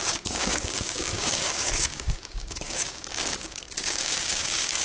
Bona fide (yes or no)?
no